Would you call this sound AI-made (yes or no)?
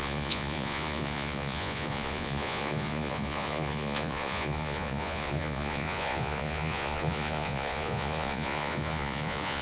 yes